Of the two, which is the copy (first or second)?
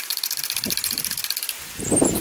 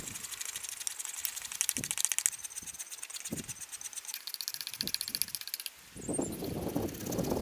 first